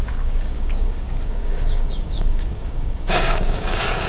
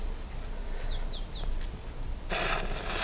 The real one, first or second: second